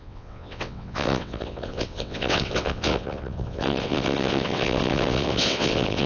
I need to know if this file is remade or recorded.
remade